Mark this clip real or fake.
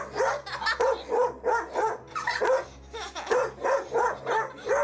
real